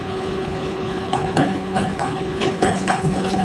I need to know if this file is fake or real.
fake